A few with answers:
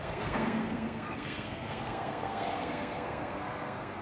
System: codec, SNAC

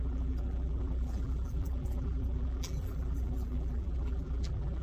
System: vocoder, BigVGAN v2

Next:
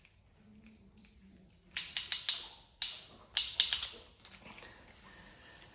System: none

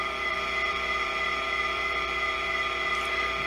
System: vocoder, BigVGAN v2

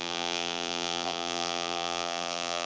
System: vocoder, BigVGAN v2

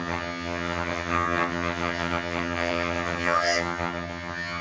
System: vocoder, HiFi-GAN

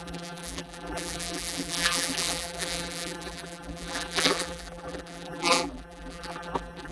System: vocoder, BigVGAN v2